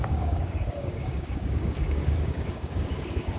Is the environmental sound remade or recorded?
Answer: remade